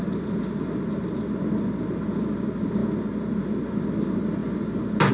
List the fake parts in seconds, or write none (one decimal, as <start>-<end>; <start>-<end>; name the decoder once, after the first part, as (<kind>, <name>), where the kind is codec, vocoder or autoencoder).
none